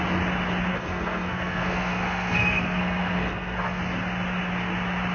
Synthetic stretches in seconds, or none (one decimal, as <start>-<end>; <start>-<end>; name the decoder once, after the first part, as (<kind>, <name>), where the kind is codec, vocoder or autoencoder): 0.7-3.8 (codec, SNAC)